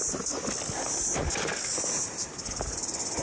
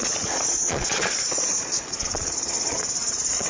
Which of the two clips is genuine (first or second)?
first